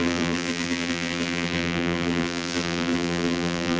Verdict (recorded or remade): remade